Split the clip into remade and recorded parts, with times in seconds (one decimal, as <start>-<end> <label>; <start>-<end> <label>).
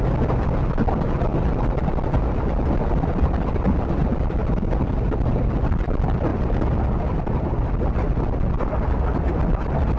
0.0-1.3 remade; 1.3-2.7 recorded; 2.7-10.0 remade